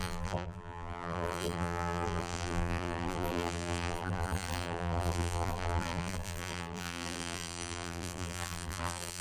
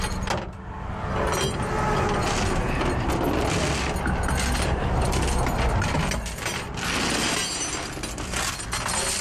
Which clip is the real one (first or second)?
second